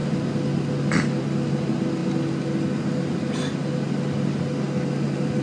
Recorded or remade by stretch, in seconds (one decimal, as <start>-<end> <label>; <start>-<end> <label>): 0.0-5.4 recorded